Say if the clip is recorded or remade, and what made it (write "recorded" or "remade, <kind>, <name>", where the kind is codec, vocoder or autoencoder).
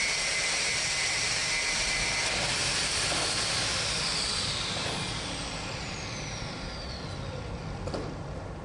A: recorded